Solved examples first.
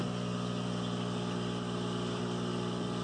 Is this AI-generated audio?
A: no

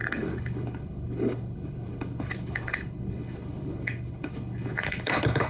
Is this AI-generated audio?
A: yes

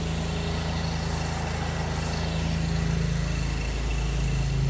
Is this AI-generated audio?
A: no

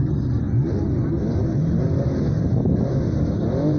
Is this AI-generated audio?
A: no